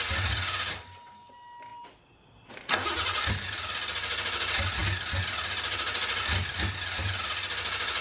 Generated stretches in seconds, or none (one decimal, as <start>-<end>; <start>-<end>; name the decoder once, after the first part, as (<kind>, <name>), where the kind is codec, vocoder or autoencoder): none